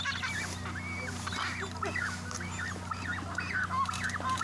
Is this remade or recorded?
recorded